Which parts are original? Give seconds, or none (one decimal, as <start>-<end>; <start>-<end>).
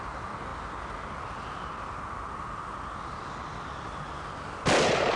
0.0-5.2